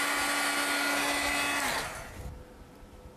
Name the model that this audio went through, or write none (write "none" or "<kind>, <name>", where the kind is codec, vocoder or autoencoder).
none